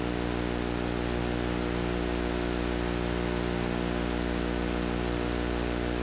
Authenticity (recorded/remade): recorded